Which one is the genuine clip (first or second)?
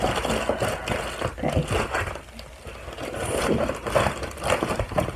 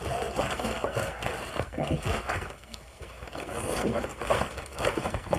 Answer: first